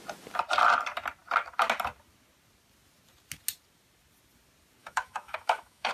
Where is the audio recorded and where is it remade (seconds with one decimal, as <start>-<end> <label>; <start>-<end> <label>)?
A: 0.0-4.8 recorded; 4.8-5.9 remade